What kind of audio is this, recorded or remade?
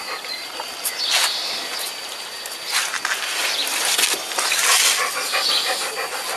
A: recorded